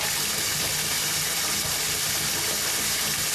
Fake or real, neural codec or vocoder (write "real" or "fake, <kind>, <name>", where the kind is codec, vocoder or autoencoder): real